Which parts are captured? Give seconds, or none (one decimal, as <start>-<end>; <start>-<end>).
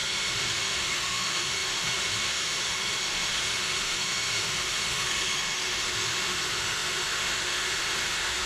none